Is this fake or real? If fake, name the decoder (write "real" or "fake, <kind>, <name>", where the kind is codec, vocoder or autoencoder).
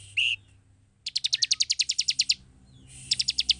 real